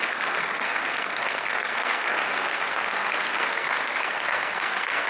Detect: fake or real fake